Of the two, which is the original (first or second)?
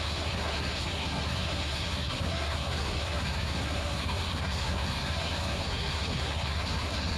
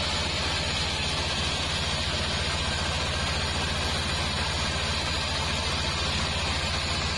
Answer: second